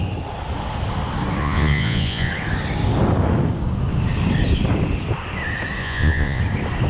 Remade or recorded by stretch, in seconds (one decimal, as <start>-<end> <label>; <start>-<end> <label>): 0.0-1.4 recorded; 1.4-2.3 remade; 2.3-5.8 recorded; 5.8-6.4 remade; 6.4-6.9 recorded